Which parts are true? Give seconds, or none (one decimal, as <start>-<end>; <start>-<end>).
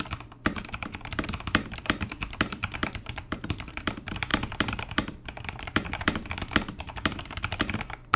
none